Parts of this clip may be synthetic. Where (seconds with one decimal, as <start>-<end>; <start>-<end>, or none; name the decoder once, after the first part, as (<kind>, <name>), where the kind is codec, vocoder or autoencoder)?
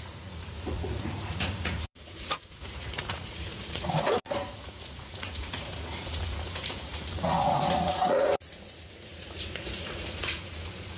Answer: 0.0-11.0 (vocoder, Vocos)